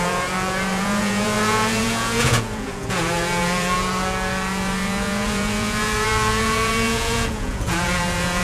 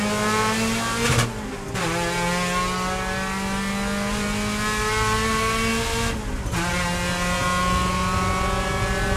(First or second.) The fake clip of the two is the first